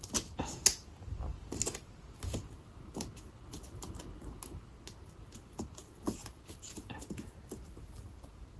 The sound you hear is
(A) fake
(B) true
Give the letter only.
B